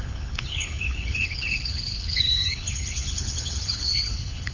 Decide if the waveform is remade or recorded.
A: remade